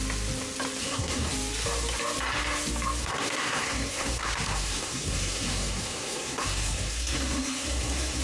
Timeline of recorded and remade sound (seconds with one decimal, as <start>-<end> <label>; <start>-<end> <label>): 0.0-0.8 recorded; 0.8-1.3 remade; 1.3-3.0 recorded; 3.0-8.2 remade